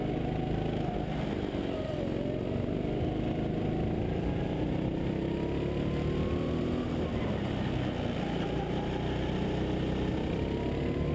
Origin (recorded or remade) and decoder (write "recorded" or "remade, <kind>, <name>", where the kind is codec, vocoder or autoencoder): recorded